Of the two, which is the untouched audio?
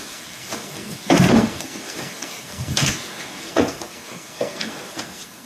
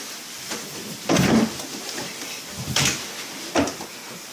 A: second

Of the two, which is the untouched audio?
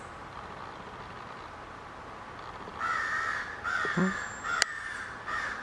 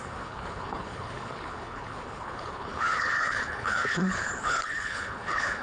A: first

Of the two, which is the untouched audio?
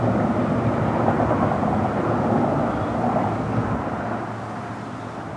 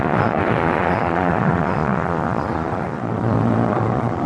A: first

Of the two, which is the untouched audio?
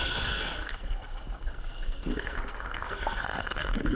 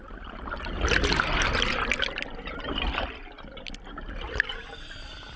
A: second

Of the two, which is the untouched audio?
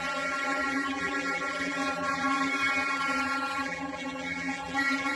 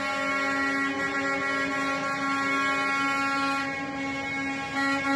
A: second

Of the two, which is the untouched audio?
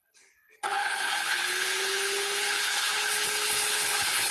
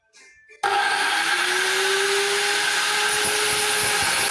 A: second